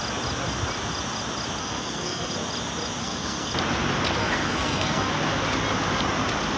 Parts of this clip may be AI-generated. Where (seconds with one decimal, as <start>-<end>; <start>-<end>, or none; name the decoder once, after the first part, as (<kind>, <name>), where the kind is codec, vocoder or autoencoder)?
1.6-2.3 (codec, SNAC); 3.0-3.5; 4.2-5.1